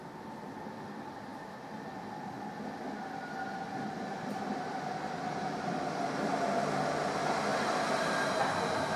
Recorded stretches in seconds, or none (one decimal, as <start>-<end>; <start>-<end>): 0.0-9.0